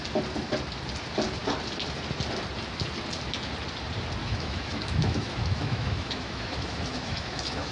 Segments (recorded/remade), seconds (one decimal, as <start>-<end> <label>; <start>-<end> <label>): 0.0-4.2 recorded; 4.2-7.7 remade